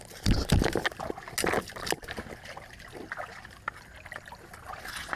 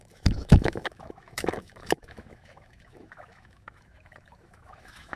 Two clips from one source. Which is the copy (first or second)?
second